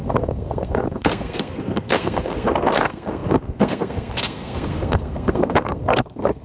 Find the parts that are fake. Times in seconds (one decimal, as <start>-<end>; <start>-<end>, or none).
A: 0.0-6.4